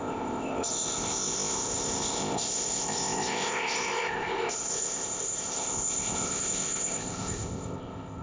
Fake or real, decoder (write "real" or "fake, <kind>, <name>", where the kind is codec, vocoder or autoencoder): fake, codec, ZipCodec